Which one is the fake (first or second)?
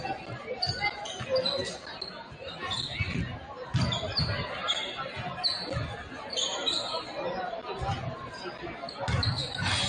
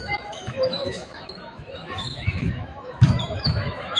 second